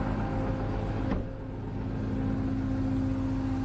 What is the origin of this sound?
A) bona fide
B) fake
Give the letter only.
A